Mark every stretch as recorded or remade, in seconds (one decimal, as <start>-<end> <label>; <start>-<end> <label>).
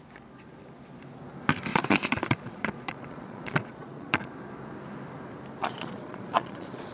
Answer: 0.0-1.7 recorded; 1.7-4.3 remade; 4.3-5.6 recorded; 5.6-6.9 remade